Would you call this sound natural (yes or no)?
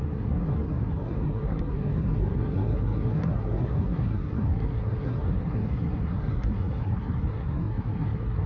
no